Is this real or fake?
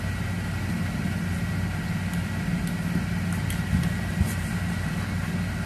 real